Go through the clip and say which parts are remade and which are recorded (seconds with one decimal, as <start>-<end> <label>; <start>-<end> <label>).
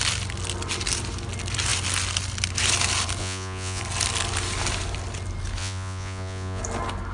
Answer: 0.0-3.2 recorded; 3.2-3.8 remade; 3.8-5.6 recorded; 5.6-6.6 remade; 6.6-7.1 recorded